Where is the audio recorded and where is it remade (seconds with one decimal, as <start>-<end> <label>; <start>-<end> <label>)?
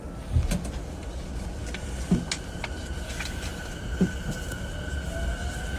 0.0-5.8 recorded